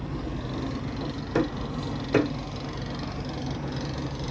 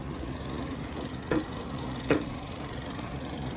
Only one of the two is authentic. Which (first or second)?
first